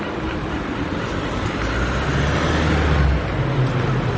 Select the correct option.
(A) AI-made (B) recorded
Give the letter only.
B